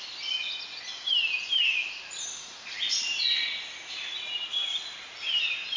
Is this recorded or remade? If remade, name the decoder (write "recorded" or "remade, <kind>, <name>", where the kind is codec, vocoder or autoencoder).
recorded